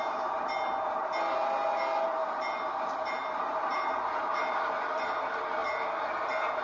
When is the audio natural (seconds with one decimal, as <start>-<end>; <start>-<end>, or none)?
0.0-6.6